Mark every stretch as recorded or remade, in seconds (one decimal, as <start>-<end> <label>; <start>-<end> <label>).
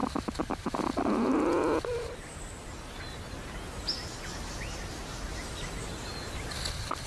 0.0-7.1 recorded